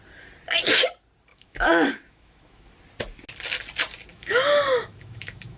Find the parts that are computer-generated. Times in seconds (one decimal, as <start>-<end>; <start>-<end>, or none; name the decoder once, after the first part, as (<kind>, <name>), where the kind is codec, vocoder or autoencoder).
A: 1.3-2.7 (autoencoder, DAC-VAE); 4.1-5.6